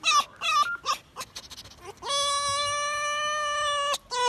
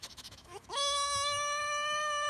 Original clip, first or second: first